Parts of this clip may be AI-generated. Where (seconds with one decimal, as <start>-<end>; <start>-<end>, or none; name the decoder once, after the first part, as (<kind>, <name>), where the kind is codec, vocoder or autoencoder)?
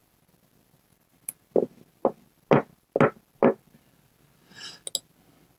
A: none